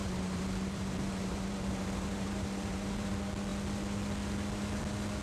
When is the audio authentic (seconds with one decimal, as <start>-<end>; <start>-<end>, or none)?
3.1-5.2